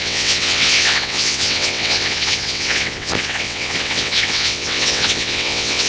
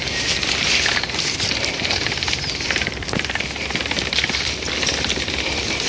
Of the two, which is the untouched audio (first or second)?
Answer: second